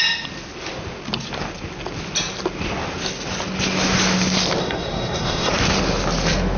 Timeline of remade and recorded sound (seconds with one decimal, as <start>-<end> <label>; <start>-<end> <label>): 0.0-4.6 recorded; 4.6-5.5 remade; 5.5-6.6 recorded